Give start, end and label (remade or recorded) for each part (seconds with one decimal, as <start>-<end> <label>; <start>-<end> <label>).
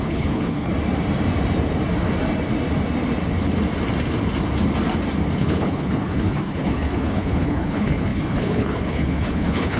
0.0-0.7 remade; 0.7-5.4 recorded; 5.4-9.8 remade